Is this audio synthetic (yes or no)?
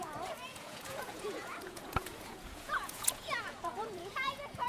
yes